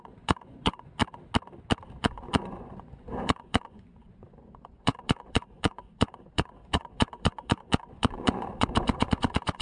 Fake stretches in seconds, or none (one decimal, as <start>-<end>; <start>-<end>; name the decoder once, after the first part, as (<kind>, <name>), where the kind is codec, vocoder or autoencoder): 0.0-1.0 (vocoder, Vocos); 2.0-9.6